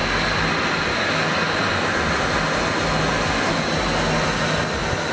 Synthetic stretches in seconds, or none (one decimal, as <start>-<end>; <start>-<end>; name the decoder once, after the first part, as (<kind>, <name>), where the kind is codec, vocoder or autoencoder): none